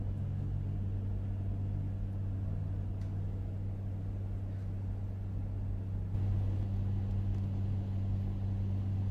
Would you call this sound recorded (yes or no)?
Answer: yes